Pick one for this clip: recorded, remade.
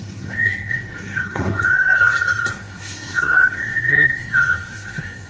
remade